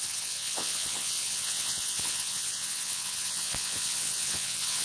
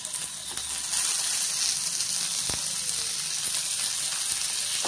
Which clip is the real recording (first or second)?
second